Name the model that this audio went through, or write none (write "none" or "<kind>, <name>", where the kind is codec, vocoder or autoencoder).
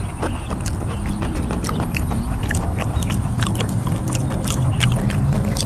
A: vocoder, BigVGAN v2